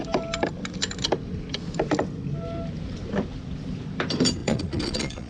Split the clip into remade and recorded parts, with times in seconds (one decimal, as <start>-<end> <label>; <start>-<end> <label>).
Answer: 0.0-4.4 recorded; 4.4-5.3 remade